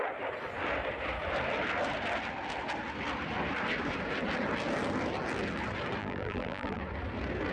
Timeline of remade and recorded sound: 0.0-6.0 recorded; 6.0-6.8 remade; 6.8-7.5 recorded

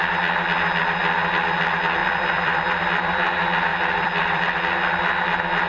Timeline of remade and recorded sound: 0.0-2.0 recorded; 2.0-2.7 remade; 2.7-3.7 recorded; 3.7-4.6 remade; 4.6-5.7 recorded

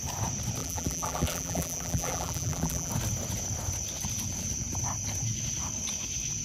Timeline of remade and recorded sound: 0.0-0.6 recorded; 0.6-2.9 remade; 2.9-6.4 recorded

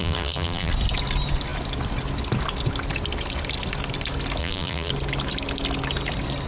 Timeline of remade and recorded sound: 0.0-0.7 remade; 0.7-4.4 recorded; 4.4-4.9 remade; 4.9-6.5 recorded

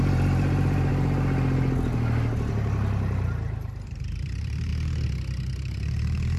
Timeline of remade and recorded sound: 0.0-0.9 remade; 0.9-3.9 recorded; 3.9-4.7 remade; 4.7-5.6 recorded; 5.6-6.4 remade

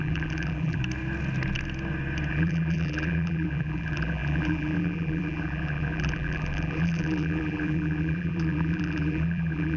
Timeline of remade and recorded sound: 0.0-0.8 remade; 0.8-2.3 recorded; 2.3-9.8 remade